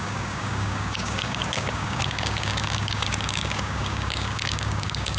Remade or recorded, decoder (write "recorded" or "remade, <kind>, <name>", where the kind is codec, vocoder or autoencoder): remade, codec, DAC